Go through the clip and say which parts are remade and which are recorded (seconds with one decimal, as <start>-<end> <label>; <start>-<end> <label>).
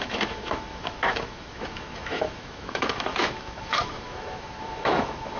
0.0-5.4 remade